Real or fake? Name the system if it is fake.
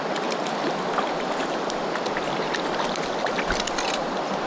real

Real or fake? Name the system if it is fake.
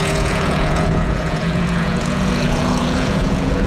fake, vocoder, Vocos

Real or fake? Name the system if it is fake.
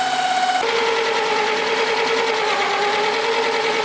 real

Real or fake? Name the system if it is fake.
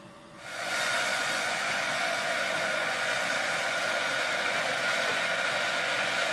fake, vocoder, Vocos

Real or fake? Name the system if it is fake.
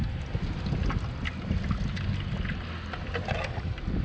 real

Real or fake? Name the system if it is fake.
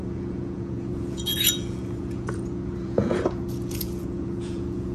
fake, vocoder, Vocos